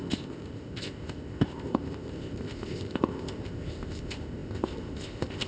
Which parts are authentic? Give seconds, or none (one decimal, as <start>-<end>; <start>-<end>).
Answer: none